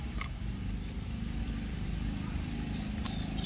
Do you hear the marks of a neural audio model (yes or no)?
yes